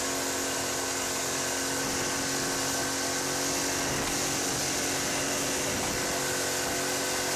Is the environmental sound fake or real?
real